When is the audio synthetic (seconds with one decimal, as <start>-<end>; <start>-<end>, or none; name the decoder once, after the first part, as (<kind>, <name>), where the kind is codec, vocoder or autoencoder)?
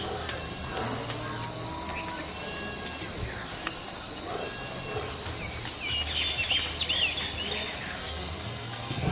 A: 8.0-9.1 (codec, SNAC)